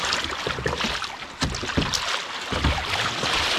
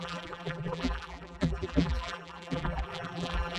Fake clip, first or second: second